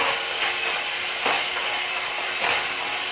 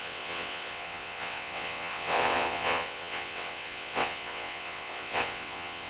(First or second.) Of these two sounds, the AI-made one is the second